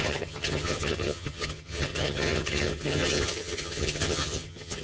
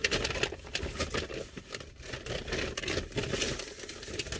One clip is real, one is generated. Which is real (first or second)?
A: second